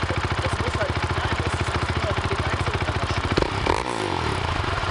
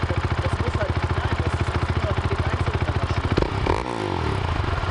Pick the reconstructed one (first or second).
first